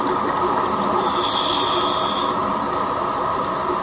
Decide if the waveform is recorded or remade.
recorded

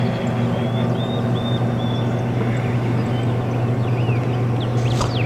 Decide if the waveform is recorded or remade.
recorded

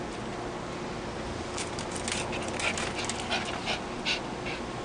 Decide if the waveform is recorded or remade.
recorded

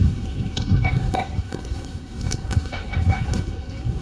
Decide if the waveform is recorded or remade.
remade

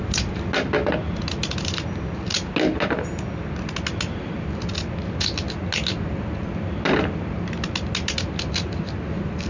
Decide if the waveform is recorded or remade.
recorded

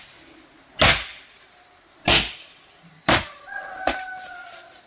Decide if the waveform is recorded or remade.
recorded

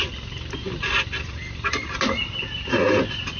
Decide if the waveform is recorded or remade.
recorded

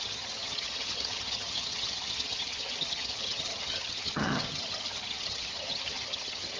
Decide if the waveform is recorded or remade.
remade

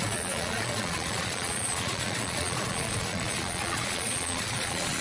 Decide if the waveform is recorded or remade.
remade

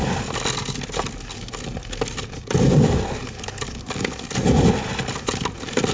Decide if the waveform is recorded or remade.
recorded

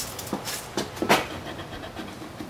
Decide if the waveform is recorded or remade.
recorded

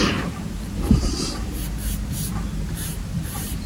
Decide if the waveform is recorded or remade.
remade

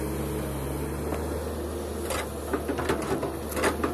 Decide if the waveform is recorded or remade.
recorded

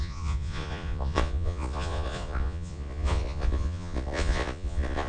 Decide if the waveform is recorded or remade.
remade